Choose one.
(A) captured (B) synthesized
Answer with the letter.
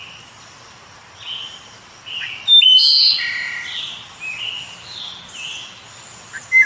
A